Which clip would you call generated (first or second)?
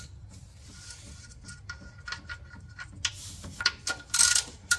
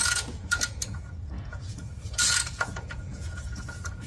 second